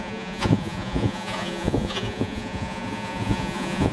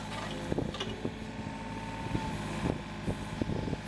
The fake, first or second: first